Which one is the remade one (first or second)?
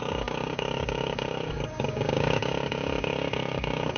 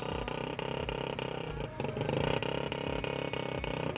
first